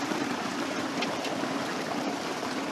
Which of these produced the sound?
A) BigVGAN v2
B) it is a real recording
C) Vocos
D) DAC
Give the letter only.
A